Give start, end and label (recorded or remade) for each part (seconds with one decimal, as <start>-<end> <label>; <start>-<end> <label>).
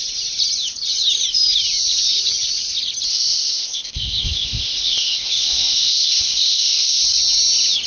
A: 0.0-3.1 recorded; 3.1-7.0 remade; 7.0-7.9 recorded